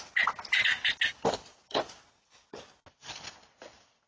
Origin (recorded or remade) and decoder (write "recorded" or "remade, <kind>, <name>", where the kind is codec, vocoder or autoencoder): recorded